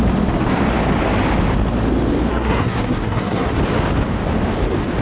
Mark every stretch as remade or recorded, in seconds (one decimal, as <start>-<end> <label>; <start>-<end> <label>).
0.0-2.3 recorded; 2.3-3.6 remade; 3.6-5.0 recorded